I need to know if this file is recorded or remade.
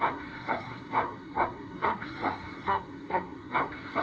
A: remade